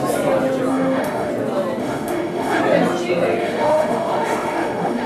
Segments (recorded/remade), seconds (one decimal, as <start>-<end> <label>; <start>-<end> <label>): 0.0-0.7 recorded; 0.7-1.3 remade; 1.3-1.8 recorded; 1.8-2.6 remade; 2.6-3.4 recorded; 3.4-5.1 remade

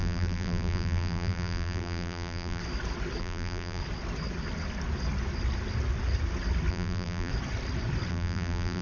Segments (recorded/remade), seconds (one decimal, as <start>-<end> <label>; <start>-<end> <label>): 0.0-2.6 remade; 2.6-3.2 recorded; 3.2-3.8 remade; 3.8-6.7 recorded; 6.7-7.3 remade; 7.3-8.1 recorded; 8.1-8.8 remade

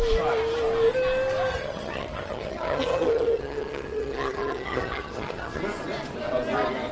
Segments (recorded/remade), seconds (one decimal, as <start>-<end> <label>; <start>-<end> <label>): 0.0-1.5 recorded; 1.5-5.6 remade; 5.6-6.9 recorded

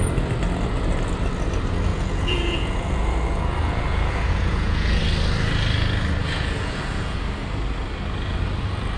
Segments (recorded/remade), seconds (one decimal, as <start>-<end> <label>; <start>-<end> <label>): 0.0-1.9 recorded; 1.9-5.0 remade; 5.0-6.2 recorded; 6.2-7.2 remade; 7.2-9.0 recorded